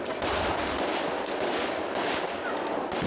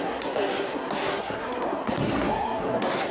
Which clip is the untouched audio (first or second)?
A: first